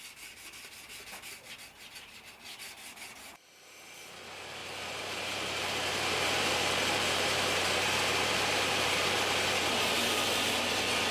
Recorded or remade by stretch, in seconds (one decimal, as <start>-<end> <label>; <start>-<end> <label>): 0.0-4.6 recorded; 4.6-9.6 remade; 9.6-11.1 recorded

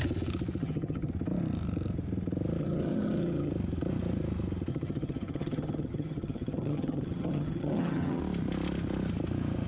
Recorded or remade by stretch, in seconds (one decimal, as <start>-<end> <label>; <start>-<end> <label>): 0.0-0.6 recorded; 0.6-1.1 remade; 1.1-2.6 recorded; 2.6-3.5 remade; 3.5-4.7 recorded; 4.7-8.2 remade; 8.2-9.7 recorded

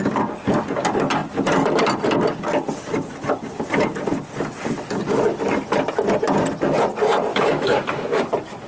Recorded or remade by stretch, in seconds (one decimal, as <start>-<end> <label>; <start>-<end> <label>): 0.0-7.3 recorded; 7.3-8.2 remade; 8.2-8.7 recorded